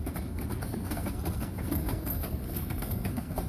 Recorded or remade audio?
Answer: remade